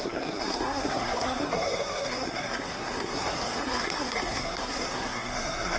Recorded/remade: remade